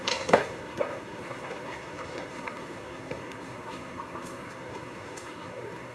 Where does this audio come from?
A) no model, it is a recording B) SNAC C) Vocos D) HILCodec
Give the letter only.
B